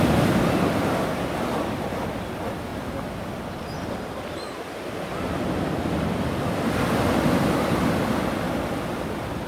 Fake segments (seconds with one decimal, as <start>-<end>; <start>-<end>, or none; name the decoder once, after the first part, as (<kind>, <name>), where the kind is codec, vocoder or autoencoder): 0.0-9.5 (vocoder, BigVGAN v2)